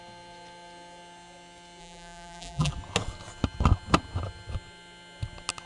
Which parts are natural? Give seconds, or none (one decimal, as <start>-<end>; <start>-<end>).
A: 0.0-1.8; 2.7-5.7